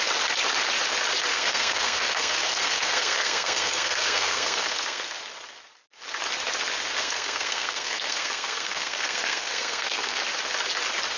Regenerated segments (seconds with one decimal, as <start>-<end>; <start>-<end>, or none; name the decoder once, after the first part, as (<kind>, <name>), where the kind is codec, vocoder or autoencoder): 1.3-5.2 (codec, SNAC); 7.0-10.2

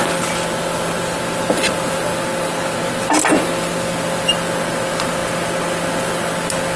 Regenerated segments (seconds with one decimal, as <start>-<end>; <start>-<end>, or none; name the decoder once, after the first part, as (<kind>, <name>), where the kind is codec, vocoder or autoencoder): 2.1-2.9 (vocoder, BigVGAN v2)

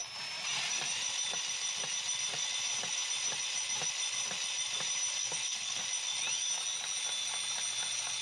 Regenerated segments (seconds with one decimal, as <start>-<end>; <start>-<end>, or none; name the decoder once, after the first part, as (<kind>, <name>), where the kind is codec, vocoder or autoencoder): 5.2-5.8 (codec, SNAC)

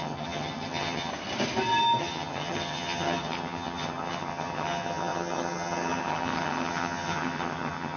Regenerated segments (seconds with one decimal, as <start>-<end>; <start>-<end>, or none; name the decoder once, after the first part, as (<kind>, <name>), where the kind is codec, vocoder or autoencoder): 0.0-1.1 (vocoder, HiFi-GAN); 2.0-8.0

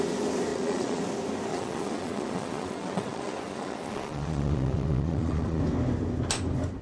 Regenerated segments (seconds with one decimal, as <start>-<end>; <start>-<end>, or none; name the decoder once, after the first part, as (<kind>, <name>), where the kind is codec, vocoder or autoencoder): 0.5-1.0 (vocoder, Vocos); 1.5-5.6

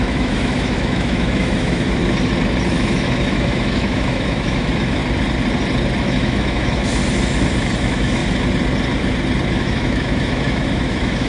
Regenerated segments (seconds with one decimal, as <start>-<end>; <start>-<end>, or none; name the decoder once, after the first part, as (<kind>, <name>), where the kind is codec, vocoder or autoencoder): 0.0-2.0 (autoencoder, DAC-VAE); 2.7-5.0; 6.0-7.0; 7.8-8.2; 9.5-11.3

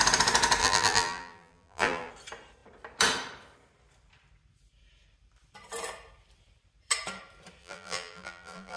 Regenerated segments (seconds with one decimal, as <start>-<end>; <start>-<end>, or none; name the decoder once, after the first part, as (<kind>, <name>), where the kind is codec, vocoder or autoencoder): 0.6-2.1 (vocoder, BigVGAN v2); 7.6-8.8

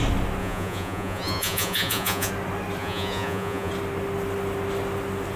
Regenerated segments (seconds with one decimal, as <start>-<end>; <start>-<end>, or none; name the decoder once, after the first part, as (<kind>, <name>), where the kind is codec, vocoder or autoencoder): 0.4-2.3 (vocoder, Vocos); 2.8-3.7